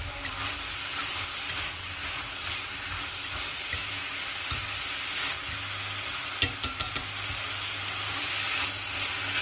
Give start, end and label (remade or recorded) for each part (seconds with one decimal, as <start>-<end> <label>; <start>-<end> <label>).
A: 0.0-9.4 recorded